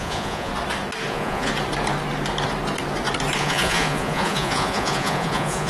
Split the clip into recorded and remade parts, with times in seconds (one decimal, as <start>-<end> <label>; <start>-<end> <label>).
0.0-0.5 remade; 0.5-1.1 recorded; 1.1-1.5 remade; 1.5-3.4 recorded; 3.4-5.7 remade